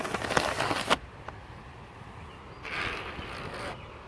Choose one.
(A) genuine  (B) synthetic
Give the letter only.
A